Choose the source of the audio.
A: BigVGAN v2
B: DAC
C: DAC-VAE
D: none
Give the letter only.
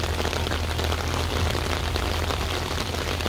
D